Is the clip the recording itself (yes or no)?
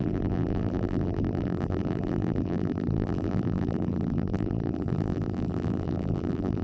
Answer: no